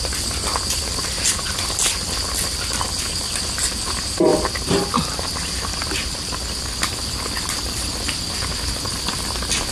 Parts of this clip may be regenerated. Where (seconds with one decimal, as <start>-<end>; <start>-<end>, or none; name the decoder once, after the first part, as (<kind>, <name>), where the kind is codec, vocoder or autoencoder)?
none